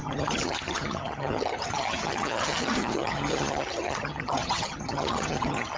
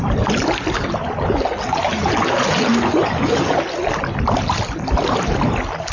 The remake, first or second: first